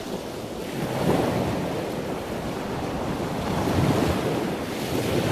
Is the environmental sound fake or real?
real